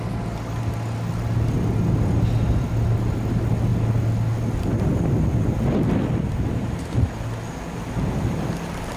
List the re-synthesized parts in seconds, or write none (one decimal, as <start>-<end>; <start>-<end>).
none